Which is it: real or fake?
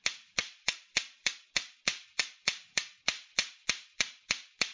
fake